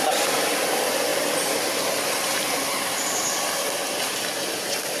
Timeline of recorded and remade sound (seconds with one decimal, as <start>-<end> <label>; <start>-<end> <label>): 0.0-5.0 recorded